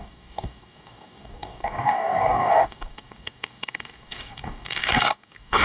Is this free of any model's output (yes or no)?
no